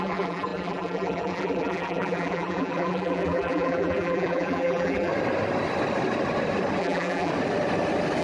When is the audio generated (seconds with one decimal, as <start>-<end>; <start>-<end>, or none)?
0.0-5.1; 6.8-7.3